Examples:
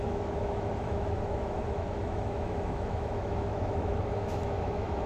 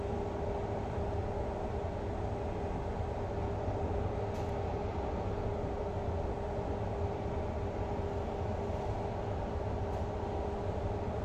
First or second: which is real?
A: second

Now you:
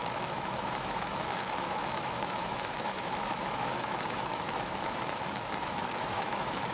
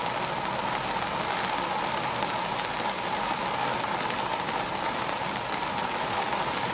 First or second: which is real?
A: second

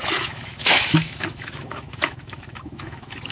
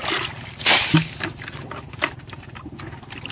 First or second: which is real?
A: second